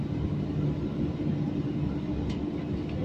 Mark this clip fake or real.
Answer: real